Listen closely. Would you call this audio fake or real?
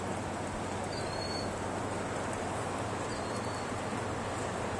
real